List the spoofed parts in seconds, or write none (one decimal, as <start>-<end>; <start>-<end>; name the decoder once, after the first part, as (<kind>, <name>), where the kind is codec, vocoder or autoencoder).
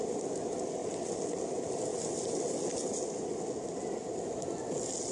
0.0-0.8 (vocoder, BigVGAN v2); 1.5-1.9